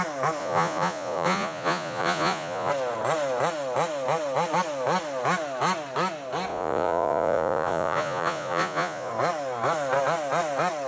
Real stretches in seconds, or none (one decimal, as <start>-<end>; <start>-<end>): 0.0-0.4; 2.7-6.5; 9.1-10.9